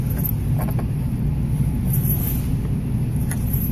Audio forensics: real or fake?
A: real